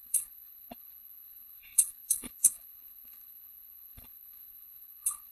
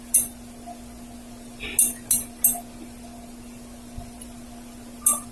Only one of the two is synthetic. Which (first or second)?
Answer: first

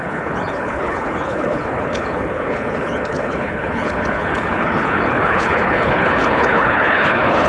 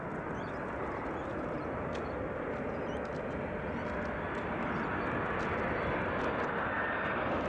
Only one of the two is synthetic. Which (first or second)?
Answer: first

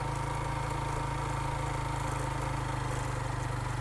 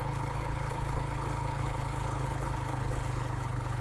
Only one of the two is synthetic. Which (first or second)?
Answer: second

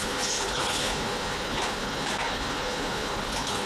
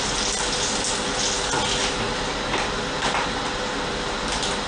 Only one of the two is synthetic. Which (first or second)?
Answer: first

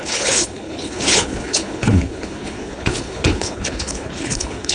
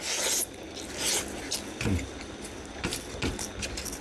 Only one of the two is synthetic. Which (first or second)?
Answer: first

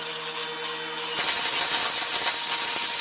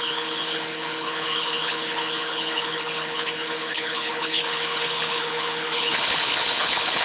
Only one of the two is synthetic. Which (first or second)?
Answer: second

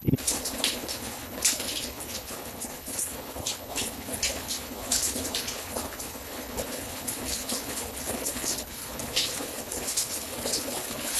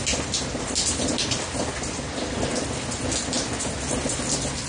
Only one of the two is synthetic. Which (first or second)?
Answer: first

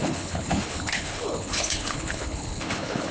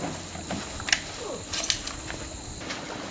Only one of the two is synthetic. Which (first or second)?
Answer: first